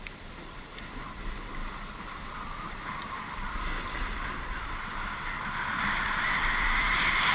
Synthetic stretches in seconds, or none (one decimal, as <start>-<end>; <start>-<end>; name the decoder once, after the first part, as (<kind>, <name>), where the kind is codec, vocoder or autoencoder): none

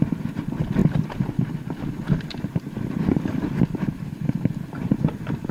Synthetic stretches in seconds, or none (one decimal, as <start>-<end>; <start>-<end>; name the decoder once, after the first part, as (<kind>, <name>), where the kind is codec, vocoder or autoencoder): none

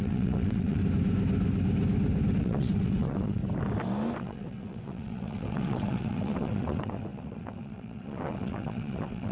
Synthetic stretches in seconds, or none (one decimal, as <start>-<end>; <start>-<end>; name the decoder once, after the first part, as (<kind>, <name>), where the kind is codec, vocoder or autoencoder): 0.0-0.8 (vocoder, WaveNeXt); 2.4-3.4; 4.2-9.3

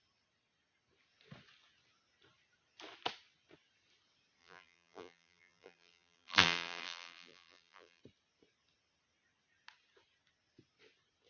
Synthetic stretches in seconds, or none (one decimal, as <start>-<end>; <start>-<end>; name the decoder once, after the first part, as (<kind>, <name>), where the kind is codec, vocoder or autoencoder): 4.4-8.0 (vocoder, BigVGAN v2)